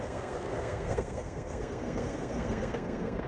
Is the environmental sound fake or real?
fake